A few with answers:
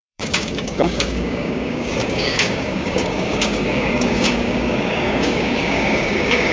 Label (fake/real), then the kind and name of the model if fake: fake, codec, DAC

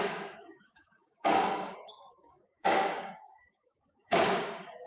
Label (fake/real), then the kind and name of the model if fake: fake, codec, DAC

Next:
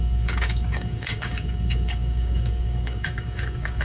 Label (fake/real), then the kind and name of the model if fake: fake, codec, DAC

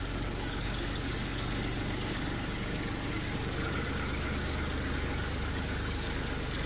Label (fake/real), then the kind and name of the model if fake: fake, codec, DAC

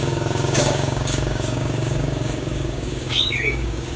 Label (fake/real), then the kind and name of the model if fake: fake, codec, DAC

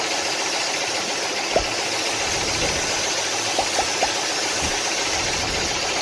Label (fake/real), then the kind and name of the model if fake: real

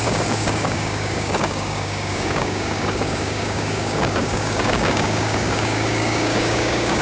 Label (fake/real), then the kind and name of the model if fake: fake, codec, DAC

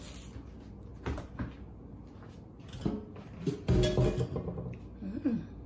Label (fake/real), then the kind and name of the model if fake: real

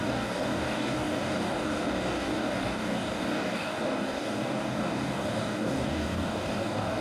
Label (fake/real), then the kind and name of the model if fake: fake, codec, DAC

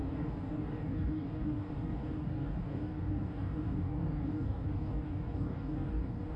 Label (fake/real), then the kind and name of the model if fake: fake, codec, DAC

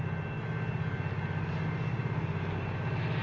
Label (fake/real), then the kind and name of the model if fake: real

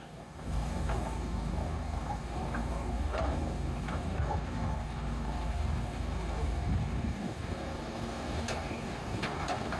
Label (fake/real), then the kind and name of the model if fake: fake, codec, DAC